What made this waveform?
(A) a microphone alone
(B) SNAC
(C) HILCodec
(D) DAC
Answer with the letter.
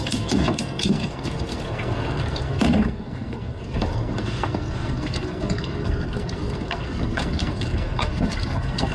B